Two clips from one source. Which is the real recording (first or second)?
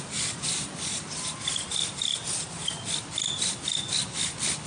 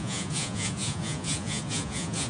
first